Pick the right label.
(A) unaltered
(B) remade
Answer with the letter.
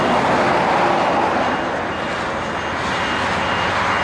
A